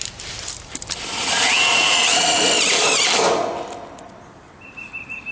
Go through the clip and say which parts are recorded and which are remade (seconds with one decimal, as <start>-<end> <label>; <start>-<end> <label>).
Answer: 0.0-1.1 recorded; 1.1-2.4 remade; 2.4-5.3 recorded